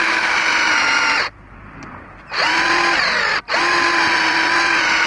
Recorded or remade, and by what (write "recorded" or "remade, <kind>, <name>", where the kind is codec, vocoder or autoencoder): recorded